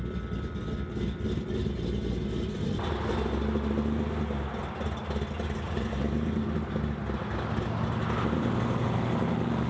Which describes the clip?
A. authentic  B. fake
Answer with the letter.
A